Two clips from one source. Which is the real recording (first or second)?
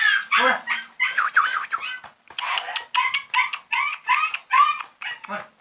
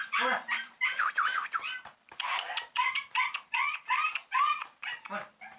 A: first